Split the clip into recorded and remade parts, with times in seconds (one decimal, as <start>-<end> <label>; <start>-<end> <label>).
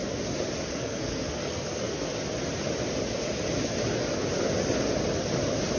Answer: 0.0-0.7 recorded; 0.7-2.1 remade; 2.1-5.8 recorded